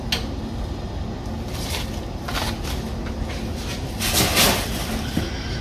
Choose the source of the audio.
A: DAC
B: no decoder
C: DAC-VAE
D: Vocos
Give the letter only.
B